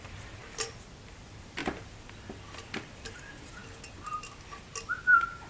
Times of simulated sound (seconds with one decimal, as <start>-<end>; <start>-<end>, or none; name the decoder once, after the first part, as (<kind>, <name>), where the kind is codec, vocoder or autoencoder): 0.0-0.4 (vocoder, BigVGAN v2); 1.2-1.6; 2.6-3.6